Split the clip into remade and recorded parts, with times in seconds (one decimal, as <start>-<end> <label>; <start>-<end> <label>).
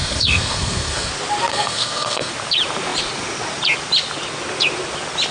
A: 0.0-1.1 remade; 1.1-1.5 recorded; 1.5-2.3 remade; 2.3-5.3 recorded